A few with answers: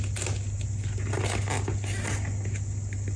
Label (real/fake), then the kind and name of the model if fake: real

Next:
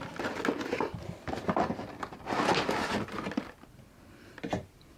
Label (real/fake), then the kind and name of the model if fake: real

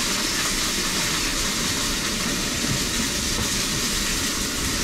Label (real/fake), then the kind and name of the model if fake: fake, vocoder, BigVGAN v2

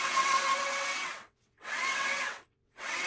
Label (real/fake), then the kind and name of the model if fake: fake, vocoder, WaveNeXt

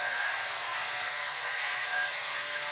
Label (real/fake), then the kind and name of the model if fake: fake, codec, SNAC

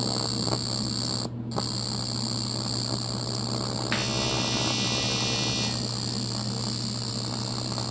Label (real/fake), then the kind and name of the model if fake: real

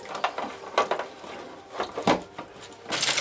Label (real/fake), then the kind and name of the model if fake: real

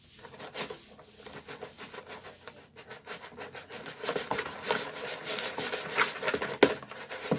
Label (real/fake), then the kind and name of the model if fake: real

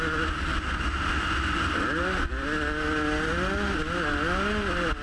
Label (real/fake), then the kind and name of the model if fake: real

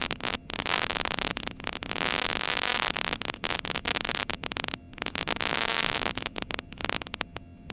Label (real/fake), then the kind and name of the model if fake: fake, codec, DAC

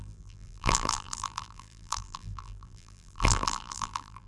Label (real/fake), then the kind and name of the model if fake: fake, vocoder, BigVGAN v2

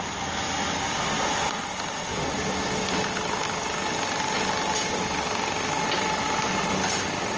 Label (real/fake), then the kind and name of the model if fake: real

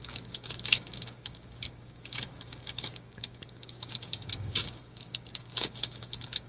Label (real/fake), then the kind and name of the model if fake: fake, codec, DAC